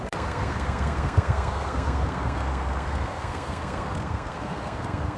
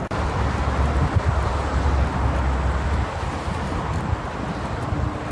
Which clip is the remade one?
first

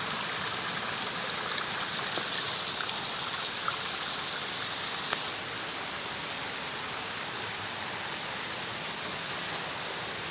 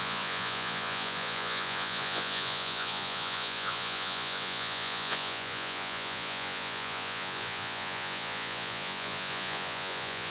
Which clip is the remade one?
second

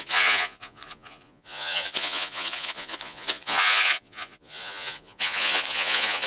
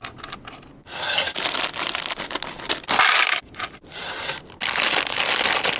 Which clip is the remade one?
first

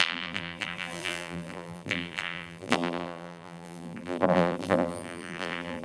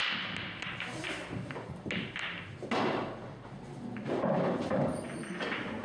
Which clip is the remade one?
first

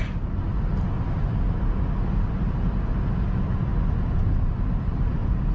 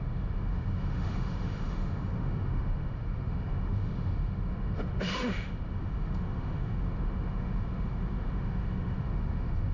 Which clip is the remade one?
second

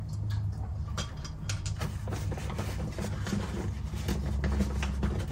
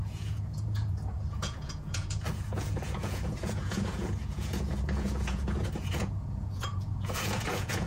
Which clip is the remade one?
second